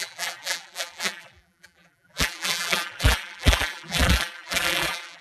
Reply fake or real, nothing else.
fake